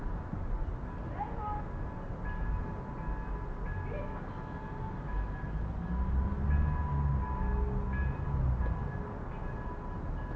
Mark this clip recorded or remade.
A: recorded